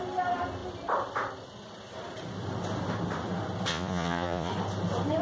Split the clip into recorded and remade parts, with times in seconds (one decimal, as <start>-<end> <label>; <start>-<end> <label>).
0.0-3.7 recorded; 3.7-4.5 remade; 4.5-5.2 recorded